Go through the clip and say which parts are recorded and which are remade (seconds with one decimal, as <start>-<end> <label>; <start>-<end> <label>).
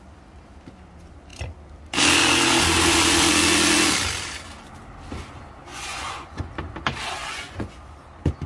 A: 0.0-5.7 recorded; 5.7-6.5 remade; 6.5-7.2 recorded; 7.2-8.0 remade; 8.0-8.5 recorded